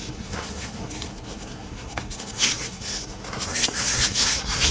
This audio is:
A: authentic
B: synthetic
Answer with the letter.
B